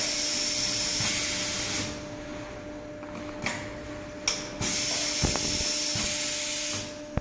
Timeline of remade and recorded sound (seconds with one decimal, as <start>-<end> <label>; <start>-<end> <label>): 0.0-7.2 recorded